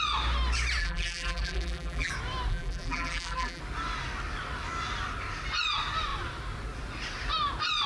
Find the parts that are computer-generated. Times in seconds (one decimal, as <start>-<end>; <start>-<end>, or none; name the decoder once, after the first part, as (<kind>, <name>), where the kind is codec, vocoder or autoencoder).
0.8-2.1 (vocoder, BigVGAN v2); 2.5-3.6

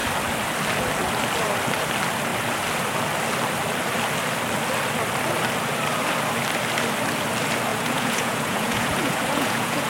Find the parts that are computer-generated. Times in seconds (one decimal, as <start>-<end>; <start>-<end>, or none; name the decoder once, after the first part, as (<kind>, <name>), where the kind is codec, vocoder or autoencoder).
7.7-9.9 (vocoder, Vocos)

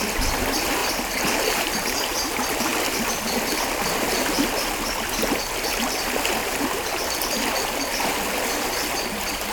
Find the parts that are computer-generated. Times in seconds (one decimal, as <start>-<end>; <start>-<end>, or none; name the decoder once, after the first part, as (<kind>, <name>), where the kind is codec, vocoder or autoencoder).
0.8-2.3 (vocoder, BigVGAN v2); 6.4-7.2

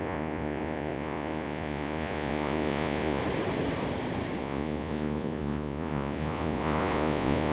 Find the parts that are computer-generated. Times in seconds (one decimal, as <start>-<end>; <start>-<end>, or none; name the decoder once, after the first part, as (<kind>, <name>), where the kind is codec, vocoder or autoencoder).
0.0-3.2 (vocoder, Vocos); 4.4-7.5

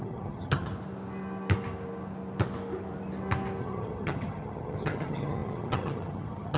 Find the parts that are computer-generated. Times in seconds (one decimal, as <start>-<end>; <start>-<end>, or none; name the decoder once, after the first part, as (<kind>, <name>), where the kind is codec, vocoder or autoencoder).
0.0-0.7 (vocoder, HiFi-GAN); 3.6-6.6